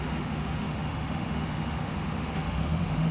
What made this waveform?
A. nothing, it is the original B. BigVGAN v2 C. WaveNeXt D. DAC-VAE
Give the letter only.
D